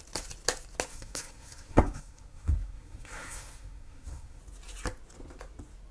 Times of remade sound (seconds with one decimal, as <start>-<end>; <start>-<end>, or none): 0.9-4.4